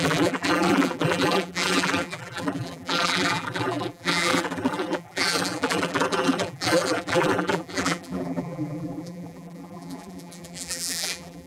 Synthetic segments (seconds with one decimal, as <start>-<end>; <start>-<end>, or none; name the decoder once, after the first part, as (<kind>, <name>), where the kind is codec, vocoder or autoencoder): 0.0-11.5 (vocoder, BigVGAN v2)